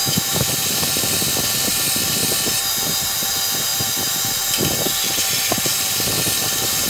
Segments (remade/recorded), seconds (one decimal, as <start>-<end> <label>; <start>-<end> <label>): 0.0-0.5 remade; 0.5-6.9 recorded